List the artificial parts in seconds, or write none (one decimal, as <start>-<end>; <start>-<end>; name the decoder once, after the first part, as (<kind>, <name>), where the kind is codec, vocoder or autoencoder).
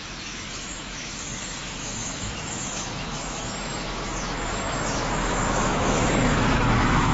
0.0-7.1 (autoencoder, DAC-VAE)